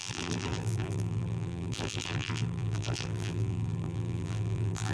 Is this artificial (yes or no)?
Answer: yes